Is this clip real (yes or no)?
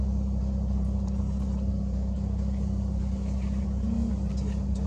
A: yes